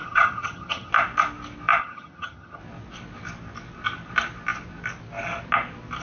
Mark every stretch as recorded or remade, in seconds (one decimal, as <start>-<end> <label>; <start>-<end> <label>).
0.0-0.9 remade; 0.9-1.8 recorded; 1.8-2.6 remade; 2.6-6.0 recorded